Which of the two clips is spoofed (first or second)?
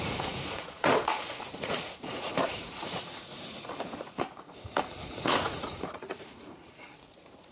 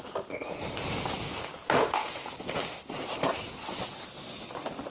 first